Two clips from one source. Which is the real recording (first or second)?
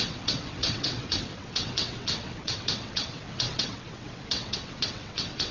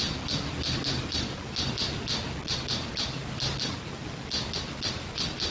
second